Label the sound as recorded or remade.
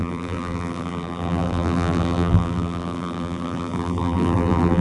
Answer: remade